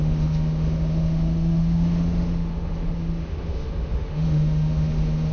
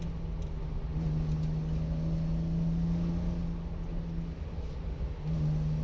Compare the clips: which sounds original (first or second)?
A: second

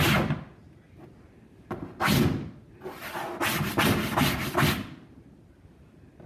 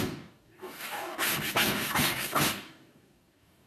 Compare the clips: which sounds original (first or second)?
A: first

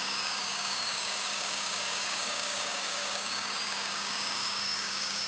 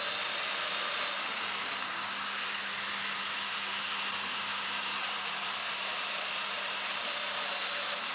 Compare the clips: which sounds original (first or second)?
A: second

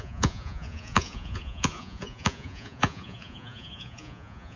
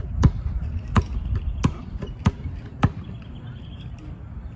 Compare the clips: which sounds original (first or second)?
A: second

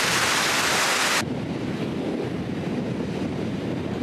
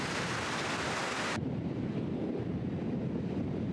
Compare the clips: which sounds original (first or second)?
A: first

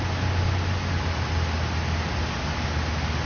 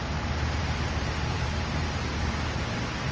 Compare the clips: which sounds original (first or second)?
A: first